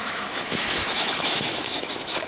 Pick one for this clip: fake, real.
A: fake